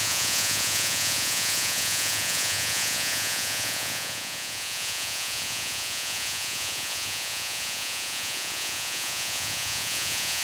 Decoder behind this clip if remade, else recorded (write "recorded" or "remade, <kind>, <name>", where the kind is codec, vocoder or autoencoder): remade, vocoder, Vocos